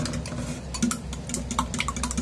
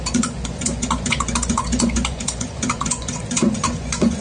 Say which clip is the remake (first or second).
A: second